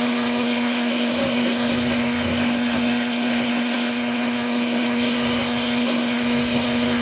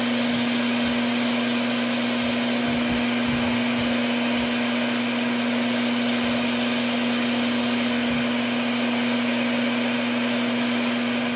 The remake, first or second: first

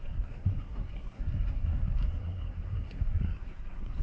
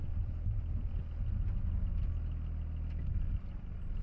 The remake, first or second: first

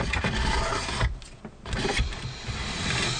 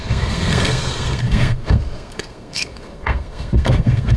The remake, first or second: second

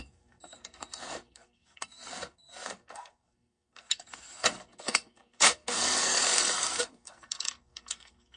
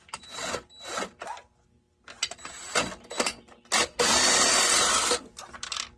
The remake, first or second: first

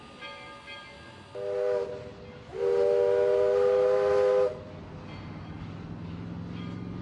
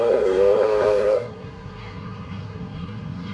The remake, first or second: second